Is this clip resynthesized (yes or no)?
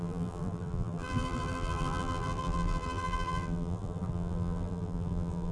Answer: yes